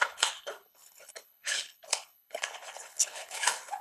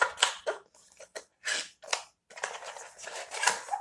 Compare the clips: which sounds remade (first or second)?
first